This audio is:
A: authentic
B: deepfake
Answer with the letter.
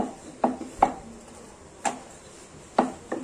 A